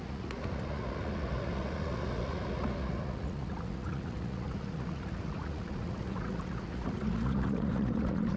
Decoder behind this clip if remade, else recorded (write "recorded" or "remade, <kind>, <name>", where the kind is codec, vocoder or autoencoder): remade, vocoder, Vocos